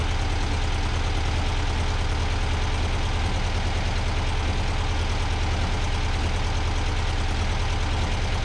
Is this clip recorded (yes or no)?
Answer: yes